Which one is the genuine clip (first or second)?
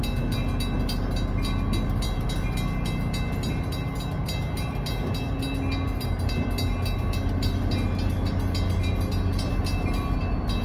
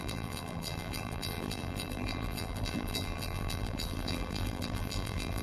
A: first